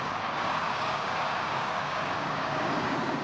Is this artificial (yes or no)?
yes